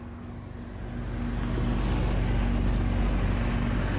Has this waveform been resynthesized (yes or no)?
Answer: no